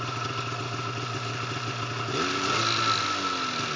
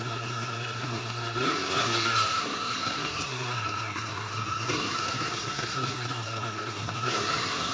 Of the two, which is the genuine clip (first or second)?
first